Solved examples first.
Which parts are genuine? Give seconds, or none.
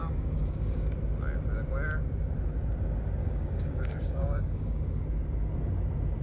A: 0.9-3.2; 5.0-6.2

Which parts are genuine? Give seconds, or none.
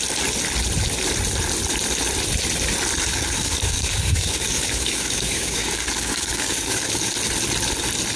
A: 0.0-3.1; 7.1-8.2